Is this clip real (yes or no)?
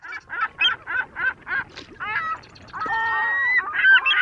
yes